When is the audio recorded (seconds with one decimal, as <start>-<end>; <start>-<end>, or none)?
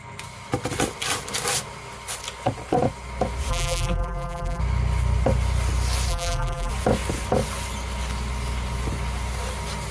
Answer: 0.0-3.5; 4.6-6.1; 6.7-9.9